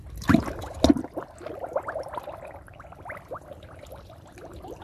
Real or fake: real